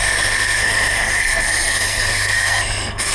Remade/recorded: remade